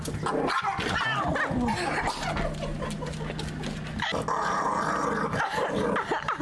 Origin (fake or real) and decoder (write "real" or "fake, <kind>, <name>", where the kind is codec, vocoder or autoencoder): real